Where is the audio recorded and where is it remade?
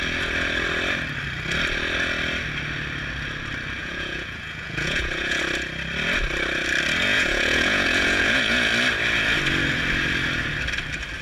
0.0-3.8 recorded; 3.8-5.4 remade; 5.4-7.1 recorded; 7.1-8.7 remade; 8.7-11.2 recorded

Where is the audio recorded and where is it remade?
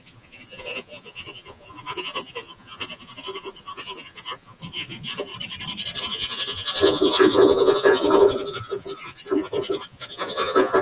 0.0-5.3 remade; 5.3-6.0 recorded; 6.0-10.8 remade